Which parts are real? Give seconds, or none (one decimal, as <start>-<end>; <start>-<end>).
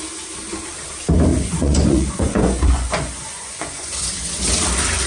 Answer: 0.0-1.3; 4.4-5.1